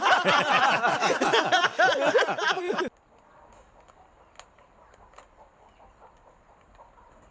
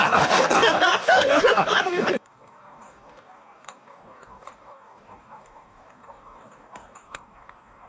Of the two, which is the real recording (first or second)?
first